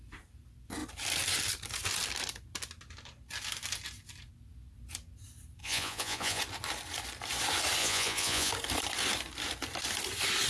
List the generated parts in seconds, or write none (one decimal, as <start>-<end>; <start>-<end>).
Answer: 5.6-6.4; 7.8-8.5